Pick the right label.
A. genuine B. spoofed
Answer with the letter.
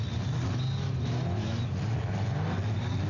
A